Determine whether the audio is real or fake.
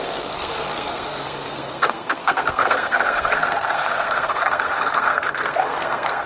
fake